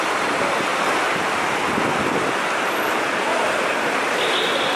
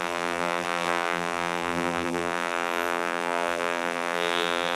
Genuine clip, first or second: first